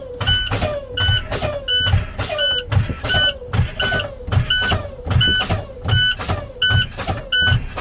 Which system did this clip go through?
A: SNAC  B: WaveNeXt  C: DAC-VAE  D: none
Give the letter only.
D